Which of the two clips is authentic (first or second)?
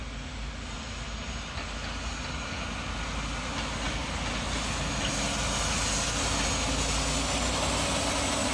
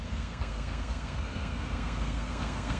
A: first